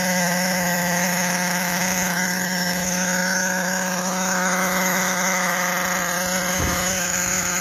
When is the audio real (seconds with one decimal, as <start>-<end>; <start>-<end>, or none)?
5.7-6.5